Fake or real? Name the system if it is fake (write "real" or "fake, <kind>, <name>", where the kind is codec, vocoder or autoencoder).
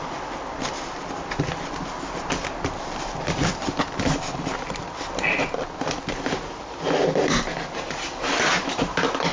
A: fake, vocoder, BigVGAN v2